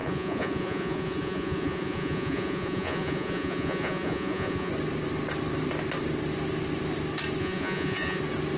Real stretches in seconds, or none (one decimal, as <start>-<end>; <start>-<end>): 4.7-7.4; 8.2-8.6